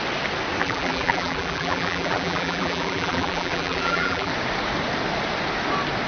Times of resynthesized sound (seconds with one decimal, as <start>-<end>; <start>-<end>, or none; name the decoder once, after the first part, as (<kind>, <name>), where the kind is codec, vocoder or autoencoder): 0.6-4.3 (vocoder, BigVGAN v2)